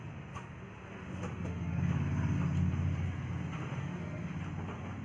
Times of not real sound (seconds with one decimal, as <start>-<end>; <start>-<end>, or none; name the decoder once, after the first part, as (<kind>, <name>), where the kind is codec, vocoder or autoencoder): 1.3-1.8 (autoencoder, DAC-VAE); 3.8-4.3